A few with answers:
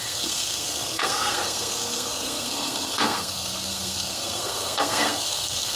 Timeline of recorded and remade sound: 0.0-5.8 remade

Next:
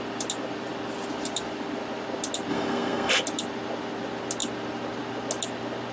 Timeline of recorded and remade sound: 0.0-2.5 recorded; 2.5-3.1 remade; 3.1-5.9 recorded

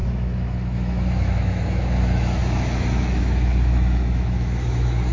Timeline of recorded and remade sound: 0.0-5.1 remade

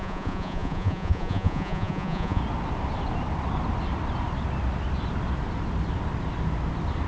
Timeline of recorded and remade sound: 0.0-2.4 remade; 2.4-7.1 recorded

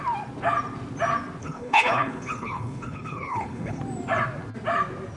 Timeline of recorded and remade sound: 0.0-1.4 recorded; 1.4-3.8 remade; 3.8-5.2 recorded

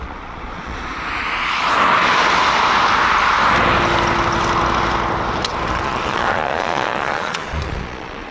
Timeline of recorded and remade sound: 0.0-0.9 remade; 0.9-5.7 recorded; 5.7-8.3 remade

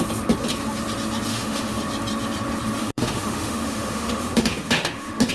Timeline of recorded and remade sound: 0.0-1.3 recorded; 1.3-1.8 remade; 1.8-2.8 recorded; 2.8-5.3 remade